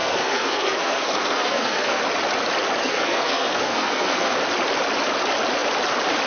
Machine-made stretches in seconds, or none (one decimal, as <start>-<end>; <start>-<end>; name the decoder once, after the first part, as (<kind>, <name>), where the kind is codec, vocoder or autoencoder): 0.0-2.0 (codec, SNAC); 2.8-4.3